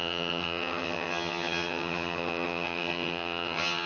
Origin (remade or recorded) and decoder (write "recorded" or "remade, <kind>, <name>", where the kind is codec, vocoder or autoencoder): remade, vocoder, HiFi-GAN